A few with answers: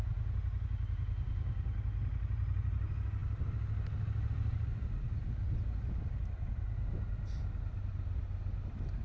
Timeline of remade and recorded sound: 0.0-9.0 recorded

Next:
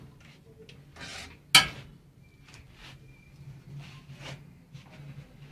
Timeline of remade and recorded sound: 0.0-5.5 recorded

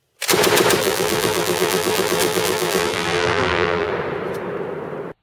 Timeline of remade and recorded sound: 0.0-0.8 recorded; 0.8-3.9 remade; 3.9-5.2 recorded

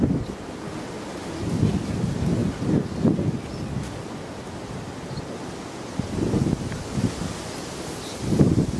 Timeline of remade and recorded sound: 0.0-8.8 recorded

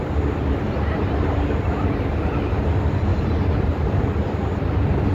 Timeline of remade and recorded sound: 0.0-3.1 recorded; 3.1-4.0 remade; 4.0-5.1 recorded

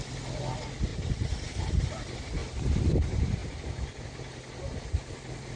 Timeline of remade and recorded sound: 0.0-0.9 recorded; 0.9-1.9 remade; 1.9-5.6 recorded